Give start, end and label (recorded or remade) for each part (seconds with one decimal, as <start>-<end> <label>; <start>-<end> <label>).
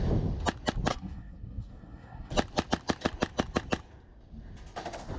0.0-0.9 recorded; 0.9-2.3 remade; 2.3-5.2 recorded